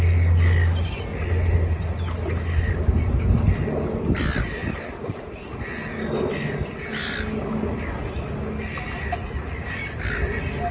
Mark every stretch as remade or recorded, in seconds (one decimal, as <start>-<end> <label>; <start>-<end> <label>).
0.0-10.7 recorded